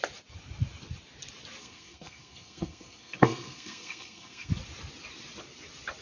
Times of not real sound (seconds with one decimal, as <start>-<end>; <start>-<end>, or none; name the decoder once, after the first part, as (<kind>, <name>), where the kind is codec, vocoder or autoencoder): 1.6-4.5 (codec, SNAC)